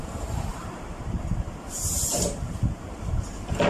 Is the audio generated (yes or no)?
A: yes